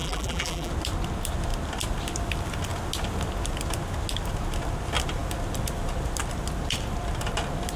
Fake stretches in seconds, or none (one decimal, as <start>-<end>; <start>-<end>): 0.0-0.7

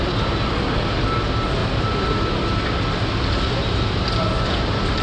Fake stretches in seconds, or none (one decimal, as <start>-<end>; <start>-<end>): none

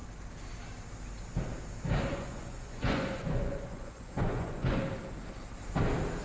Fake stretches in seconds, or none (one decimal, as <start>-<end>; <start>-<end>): 2.1-4.8

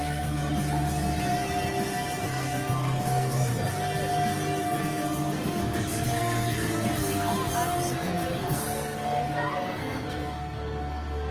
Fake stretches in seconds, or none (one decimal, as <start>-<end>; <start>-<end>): 0.0-0.4; 2.2-3.5; 4.8-7.3; 7.9-11.3

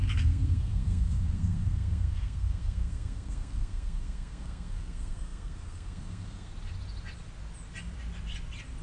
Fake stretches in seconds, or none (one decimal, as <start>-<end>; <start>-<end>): 0.0-6.5